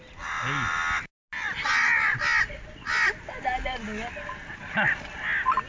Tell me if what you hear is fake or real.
real